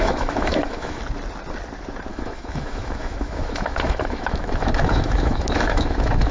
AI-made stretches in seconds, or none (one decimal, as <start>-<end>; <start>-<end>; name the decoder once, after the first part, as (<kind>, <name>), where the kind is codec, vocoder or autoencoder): 0.0-1.0 (autoencoder, DAC-VAE); 2.1-6.3